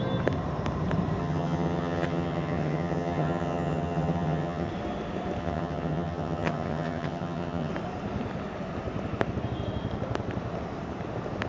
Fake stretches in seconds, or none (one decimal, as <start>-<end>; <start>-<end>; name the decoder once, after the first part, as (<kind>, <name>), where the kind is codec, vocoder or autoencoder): 1.2-4.7 (vocoder, HiFi-GAN); 5.4-7.7